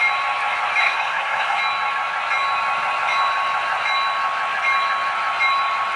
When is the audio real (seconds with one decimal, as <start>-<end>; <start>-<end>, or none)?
0.0-0.8; 1.6-6.0